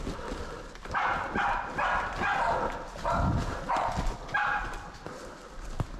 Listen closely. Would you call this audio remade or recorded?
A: recorded